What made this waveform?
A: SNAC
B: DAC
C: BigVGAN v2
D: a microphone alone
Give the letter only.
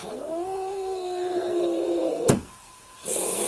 A